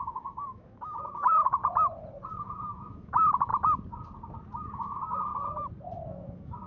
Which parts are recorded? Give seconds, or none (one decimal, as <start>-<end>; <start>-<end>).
1.6-2.3; 3.5-4.6; 5.3-6.1